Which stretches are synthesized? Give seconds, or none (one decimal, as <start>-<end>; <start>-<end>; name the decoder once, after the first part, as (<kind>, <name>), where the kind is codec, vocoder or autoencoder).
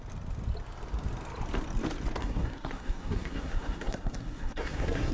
2.2-5.1 (codec, SNAC)